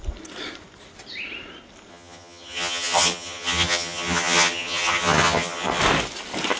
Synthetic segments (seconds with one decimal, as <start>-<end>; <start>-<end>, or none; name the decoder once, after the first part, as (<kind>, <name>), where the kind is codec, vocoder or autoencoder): 1.9-5.8 (vocoder, HiFi-GAN)